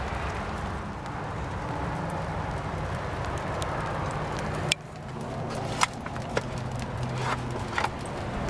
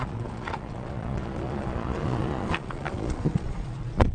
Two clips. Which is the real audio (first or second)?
first